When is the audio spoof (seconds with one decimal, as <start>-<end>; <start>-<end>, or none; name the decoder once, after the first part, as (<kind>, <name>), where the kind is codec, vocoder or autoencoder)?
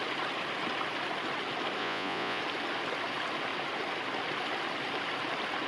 1.8-2.4 (vocoder, Vocos)